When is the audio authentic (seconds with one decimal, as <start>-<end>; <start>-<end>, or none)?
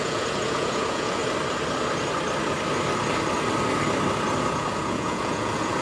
1.2-4.4